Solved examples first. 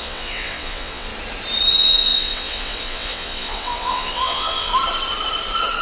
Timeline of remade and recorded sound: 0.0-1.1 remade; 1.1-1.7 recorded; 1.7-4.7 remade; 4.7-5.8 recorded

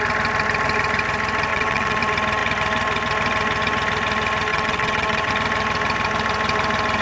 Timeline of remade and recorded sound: 0.0-1.5 recorded; 1.5-2.0 remade; 2.0-4.5 recorded; 4.5-5.3 remade; 5.3-7.0 recorded

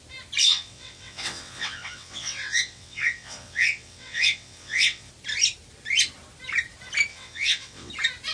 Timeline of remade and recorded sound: 0.0-0.4 recorded; 0.4-5.1 remade; 5.1-7.1 recorded; 7.1-7.9 remade; 7.9-8.3 recorded

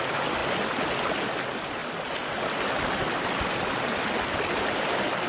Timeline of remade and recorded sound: 0.0-5.3 recorded